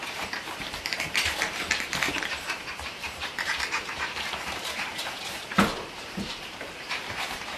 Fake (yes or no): yes